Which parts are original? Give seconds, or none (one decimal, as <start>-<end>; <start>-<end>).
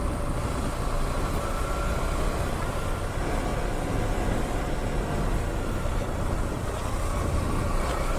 0.0-8.2